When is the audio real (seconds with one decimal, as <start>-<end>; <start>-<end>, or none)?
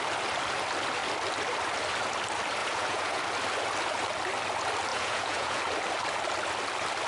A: 0.0-2.6; 3.2-4.9; 5.6-7.1